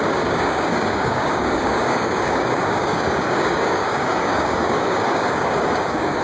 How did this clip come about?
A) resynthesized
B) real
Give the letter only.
A